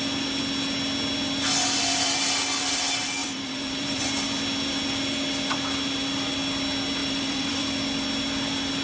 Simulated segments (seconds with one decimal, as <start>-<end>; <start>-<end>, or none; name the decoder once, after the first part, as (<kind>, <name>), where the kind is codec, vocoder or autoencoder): 3.2-4.0 (vocoder, BigVGAN v2); 7.0-7.6